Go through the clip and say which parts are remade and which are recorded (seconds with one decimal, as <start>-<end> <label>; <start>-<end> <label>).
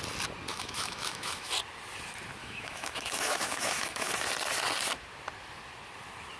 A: 0.0-0.5 recorded; 0.5-1.5 remade; 1.5-2.4 recorded; 2.4-4.1 remade; 4.1-6.4 recorded